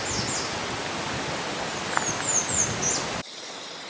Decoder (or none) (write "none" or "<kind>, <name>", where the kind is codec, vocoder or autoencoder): none